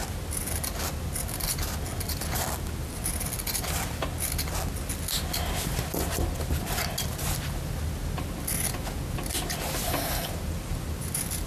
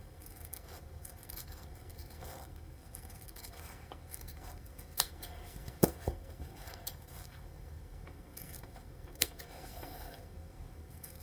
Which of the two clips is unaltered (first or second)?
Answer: first